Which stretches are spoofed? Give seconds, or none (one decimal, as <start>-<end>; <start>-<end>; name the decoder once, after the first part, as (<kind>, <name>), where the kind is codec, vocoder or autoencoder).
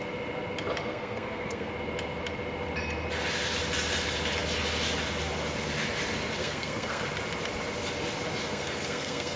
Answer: 0.9-1.7 (codec, SNAC); 6.4-7.0; 8.4-9.4